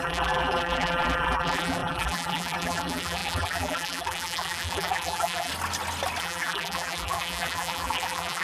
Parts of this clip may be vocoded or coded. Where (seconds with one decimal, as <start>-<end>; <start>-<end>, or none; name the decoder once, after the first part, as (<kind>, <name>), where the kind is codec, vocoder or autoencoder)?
0.0-5.5 (vocoder, BigVGAN v2); 6.2-8.4